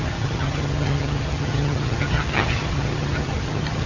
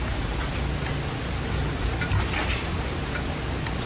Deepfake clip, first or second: first